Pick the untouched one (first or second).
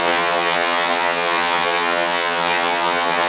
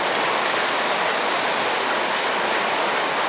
second